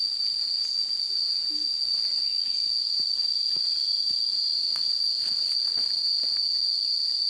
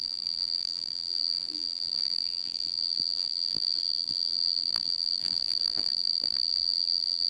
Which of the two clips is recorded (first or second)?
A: first